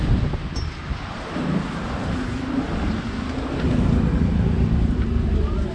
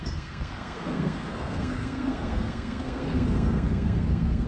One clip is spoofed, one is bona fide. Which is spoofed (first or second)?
second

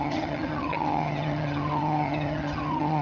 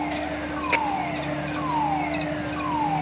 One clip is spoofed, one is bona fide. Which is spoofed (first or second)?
first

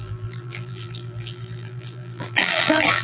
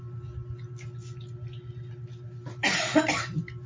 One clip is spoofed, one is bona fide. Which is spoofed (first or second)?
first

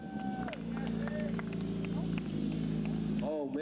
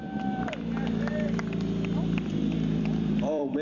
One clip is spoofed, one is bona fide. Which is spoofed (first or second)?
second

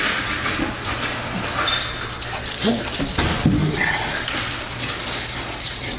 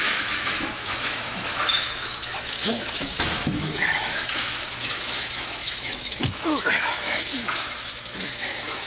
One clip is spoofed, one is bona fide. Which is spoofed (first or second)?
second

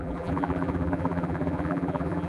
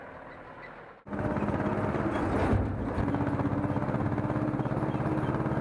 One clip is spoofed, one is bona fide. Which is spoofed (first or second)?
first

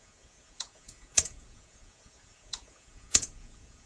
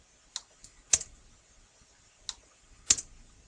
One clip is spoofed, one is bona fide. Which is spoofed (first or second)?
first